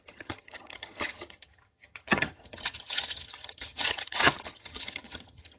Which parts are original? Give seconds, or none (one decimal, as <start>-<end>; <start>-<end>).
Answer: none